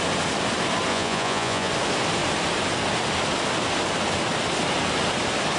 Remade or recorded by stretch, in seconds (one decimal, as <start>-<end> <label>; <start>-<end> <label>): 0.0-0.9 recorded; 0.9-1.7 remade; 1.7-5.6 recorded